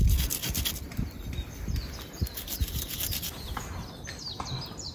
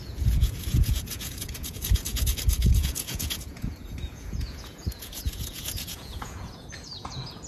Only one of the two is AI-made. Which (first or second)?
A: second